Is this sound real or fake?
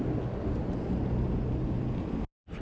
real